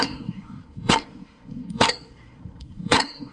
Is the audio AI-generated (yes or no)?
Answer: yes